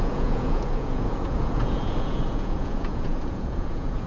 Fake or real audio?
fake